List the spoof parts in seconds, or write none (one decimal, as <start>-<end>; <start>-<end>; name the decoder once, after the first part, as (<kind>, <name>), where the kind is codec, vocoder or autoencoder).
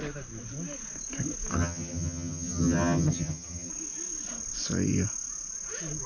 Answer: 1.5-3.7 (vocoder, HiFi-GAN)